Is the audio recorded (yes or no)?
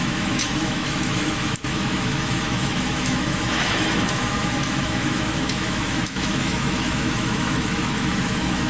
no